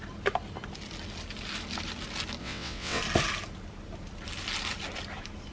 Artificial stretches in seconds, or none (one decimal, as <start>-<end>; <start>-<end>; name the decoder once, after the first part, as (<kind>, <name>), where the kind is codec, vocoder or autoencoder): 2.4-3.0 (vocoder, WaveNeXt)

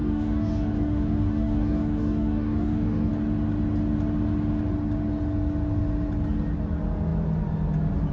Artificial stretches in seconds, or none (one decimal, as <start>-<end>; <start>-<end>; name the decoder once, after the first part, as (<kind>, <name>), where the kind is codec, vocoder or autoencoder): 0.0-3.1 (autoencoder, DAC-VAE)

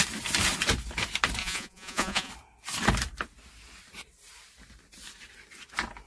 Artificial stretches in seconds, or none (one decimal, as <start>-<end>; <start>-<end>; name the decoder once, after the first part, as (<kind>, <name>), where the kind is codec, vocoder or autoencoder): 1.4-2.3 (vocoder, Vocos)

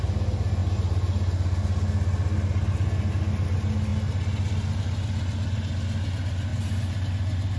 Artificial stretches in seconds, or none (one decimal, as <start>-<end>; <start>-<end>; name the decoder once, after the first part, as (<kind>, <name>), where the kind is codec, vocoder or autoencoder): 6.5-7.6 (vocoder, BigVGAN v2)

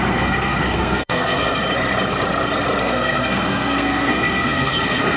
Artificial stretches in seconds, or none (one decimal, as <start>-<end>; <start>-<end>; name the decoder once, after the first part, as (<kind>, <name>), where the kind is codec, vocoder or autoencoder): 0.0-1.6 (codec, SNAC); 2.8-5.2

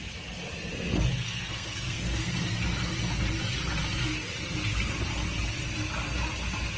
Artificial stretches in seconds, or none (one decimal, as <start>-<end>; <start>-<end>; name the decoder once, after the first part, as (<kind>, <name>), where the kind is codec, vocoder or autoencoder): 1.1-2.3 (codec, SNAC)